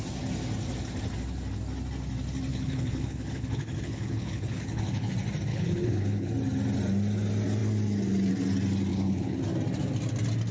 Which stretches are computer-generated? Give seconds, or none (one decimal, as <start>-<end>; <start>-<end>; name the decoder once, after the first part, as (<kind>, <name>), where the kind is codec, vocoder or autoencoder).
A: 2.5-5.1 (codec, HILCodec); 5.5-6.3; 8.9-9.4

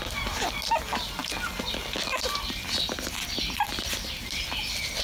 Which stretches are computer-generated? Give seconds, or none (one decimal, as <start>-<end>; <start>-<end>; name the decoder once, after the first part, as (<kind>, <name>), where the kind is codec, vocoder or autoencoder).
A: none

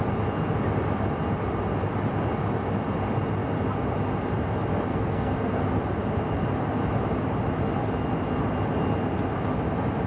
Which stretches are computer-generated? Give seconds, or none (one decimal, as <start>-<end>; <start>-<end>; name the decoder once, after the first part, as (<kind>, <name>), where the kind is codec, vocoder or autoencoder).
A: 4.9-5.6 (codec, SNAC)

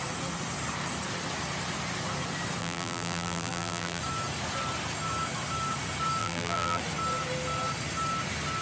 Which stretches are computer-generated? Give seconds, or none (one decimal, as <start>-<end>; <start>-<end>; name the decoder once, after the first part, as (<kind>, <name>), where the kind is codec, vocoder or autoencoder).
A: 2.6-4.0 (vocoder, BigVGAN v2); 6.2-6.8

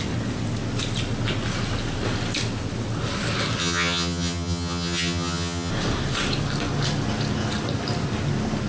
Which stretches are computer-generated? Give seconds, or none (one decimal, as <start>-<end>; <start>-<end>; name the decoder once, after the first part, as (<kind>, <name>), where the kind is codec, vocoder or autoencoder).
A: 3.6-5.7 (vocoder, HiFi-GAN)

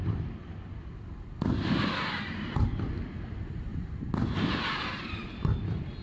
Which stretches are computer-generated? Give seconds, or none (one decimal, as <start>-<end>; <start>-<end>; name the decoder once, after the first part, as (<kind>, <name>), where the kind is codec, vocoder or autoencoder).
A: 0.0-3.7 (vocoder, BigVGAN v2); 4.5-6.0